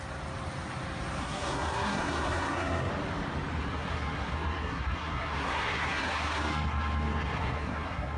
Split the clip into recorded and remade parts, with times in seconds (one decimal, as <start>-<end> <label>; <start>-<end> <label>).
0.0-1.2 recorded; 1.2-2.9 remade; 2.9-3.6 recorded; 3.6-8.2 remade

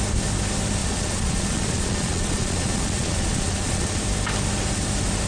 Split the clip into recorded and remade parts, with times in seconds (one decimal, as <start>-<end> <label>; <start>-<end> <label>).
0.0-0.8 recorded; 0.8-4.0 remade; 4.0-5.3 recorded

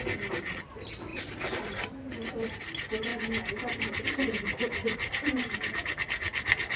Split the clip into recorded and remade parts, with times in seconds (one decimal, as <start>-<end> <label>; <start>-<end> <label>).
0.0-1.1 recorded; 1.1-2.5 remade; 2.5-4.8 recorded; 4.8-5.6 remade; 5.6-6.8 recorded

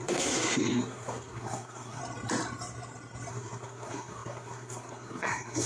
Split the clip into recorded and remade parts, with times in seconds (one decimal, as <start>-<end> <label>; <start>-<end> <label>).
0.0-2.0 remade; 2.0-3.3 recorded; 3.3-5.7 remade

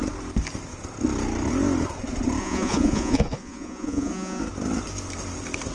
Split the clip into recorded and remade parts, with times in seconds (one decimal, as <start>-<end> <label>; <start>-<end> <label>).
0.0-2.4 recorded; 2.4-4.4 remade; 4.4-5.7 recorded

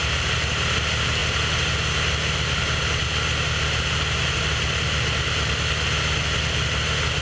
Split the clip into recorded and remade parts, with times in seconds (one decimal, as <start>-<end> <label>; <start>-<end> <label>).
0.0-7.2 recorded

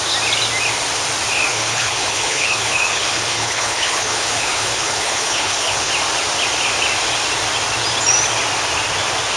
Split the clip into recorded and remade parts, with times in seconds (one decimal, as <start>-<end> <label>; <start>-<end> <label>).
0.0-1.5 recorded; 1.5-5.9 remade; 5.9-9.4 recorded